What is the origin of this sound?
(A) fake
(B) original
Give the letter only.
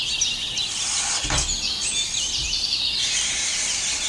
B